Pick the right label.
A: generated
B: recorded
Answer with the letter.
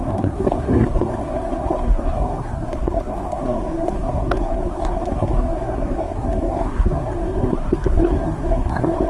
A